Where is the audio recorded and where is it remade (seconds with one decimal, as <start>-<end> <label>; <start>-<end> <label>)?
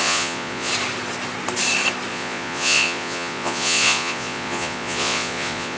0.0-0.7 remade; 0.7-2.1 recorded; 2.1-5.8 remade